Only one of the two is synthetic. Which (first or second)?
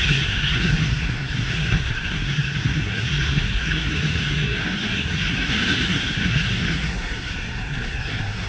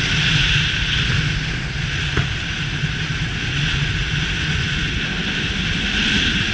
first